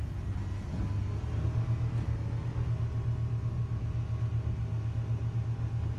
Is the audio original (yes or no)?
yes